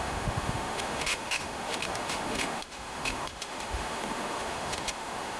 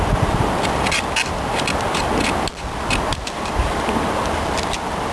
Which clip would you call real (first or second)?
second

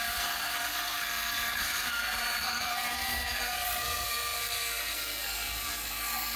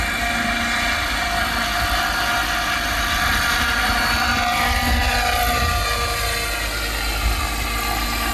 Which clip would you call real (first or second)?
second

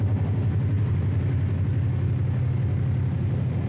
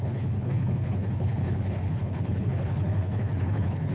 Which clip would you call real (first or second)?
first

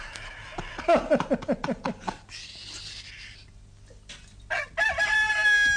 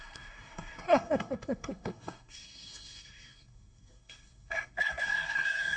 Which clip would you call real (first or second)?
first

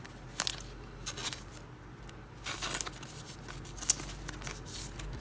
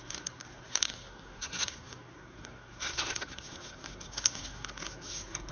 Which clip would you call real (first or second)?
first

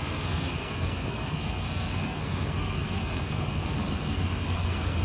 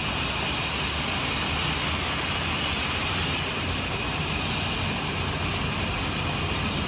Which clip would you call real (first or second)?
second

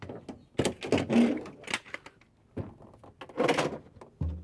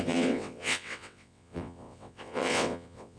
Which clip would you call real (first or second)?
first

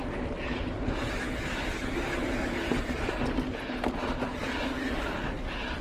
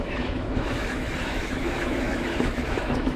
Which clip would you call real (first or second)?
first